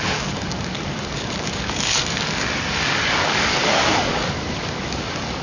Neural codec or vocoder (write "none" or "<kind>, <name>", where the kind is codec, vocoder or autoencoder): codec, DAC